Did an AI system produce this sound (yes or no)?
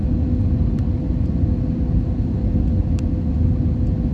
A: no